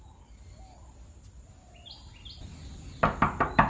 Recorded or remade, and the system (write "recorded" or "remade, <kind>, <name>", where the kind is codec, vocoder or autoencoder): recorded